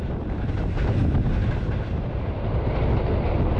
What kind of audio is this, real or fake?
real